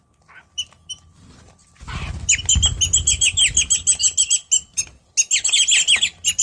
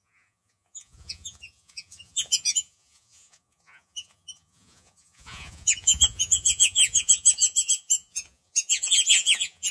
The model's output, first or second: second